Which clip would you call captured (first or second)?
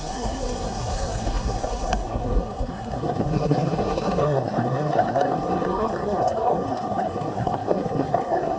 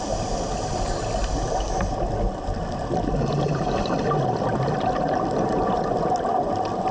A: second